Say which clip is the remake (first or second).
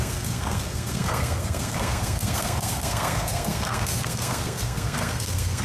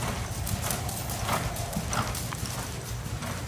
first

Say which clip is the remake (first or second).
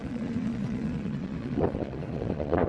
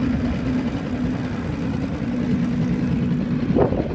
first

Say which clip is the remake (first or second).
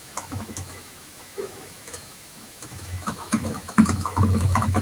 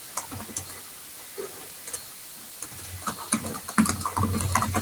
first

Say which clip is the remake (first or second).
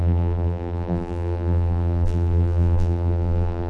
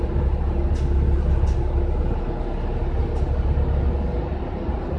first